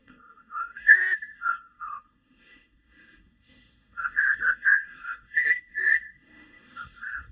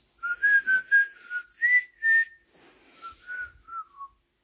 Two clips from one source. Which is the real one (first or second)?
second